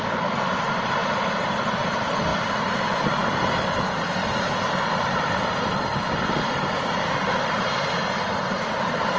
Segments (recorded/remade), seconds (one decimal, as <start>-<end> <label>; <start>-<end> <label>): 0.0-9.2 recorded